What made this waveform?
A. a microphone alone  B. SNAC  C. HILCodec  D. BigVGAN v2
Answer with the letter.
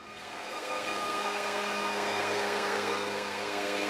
B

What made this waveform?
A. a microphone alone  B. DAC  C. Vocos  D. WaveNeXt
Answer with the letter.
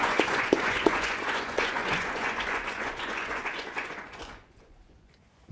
C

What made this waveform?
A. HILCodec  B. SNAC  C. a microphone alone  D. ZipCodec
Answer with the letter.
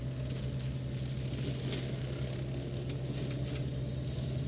C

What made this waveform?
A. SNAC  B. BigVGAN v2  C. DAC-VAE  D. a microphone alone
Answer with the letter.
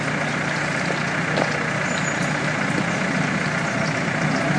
D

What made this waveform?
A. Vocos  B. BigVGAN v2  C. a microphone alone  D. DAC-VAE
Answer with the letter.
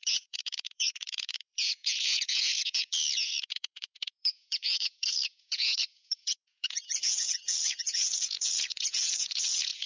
A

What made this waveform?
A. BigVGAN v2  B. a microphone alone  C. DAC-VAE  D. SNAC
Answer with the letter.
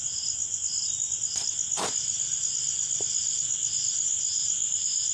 B